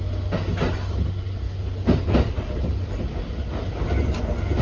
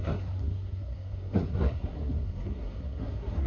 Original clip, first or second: first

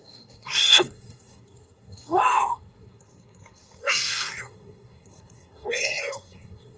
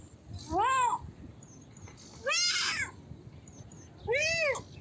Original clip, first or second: second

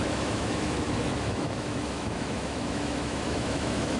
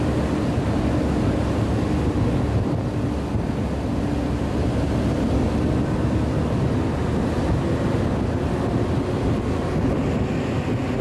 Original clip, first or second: second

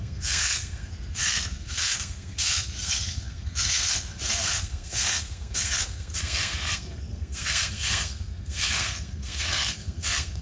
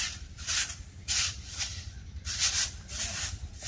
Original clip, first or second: second